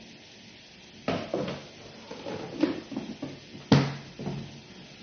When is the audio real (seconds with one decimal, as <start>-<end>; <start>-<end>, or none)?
0.0-5.0